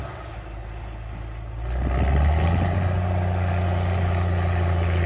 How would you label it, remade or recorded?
recorded